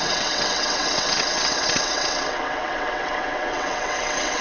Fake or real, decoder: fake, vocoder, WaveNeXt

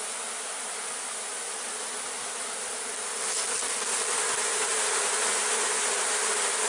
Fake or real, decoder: real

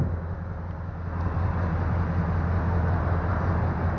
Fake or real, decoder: real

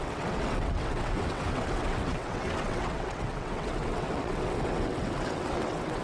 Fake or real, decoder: fake, vocoder, WaveNeXt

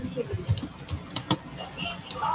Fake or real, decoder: real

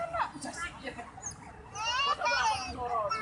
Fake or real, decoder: real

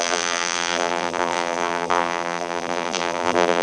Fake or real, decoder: fake, vocoder, BigVGAN v2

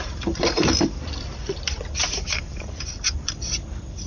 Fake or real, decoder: fake, vocoder, BigVGAN v2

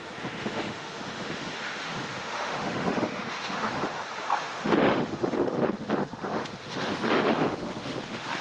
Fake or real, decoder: fake, autoencoder, DAC-VAE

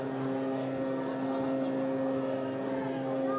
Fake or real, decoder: real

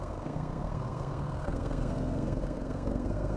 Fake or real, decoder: fake, codec, SNAC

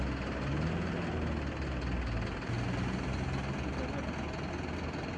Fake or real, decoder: real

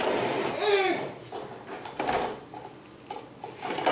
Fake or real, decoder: real